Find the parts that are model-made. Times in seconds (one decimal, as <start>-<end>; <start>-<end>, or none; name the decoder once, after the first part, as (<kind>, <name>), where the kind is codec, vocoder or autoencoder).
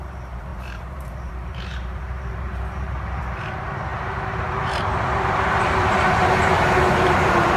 0.0-7.6 (vocoder, BigVGAN v2)